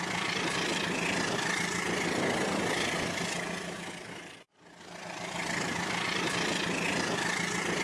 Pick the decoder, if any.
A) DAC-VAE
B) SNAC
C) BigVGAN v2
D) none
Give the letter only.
D